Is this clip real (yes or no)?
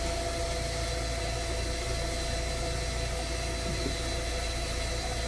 yes